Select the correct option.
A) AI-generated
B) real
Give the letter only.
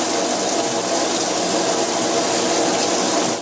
B